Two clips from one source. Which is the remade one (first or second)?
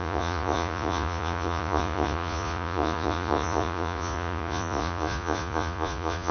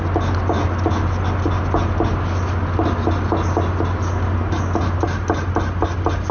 first